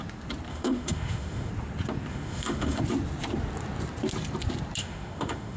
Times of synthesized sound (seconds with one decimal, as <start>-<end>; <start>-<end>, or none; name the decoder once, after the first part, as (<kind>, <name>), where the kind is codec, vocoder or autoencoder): 0.5-1.5 (autoencoder, DAC-VAE); 2.1-2.8; 4.8-5.6